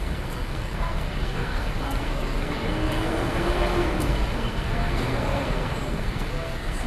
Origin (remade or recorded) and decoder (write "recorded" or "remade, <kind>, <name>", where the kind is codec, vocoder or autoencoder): remade, codec, SNAC